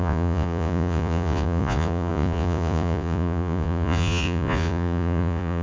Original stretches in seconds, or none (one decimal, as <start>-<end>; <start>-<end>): none